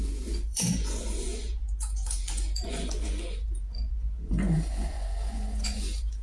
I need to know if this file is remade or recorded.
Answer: remade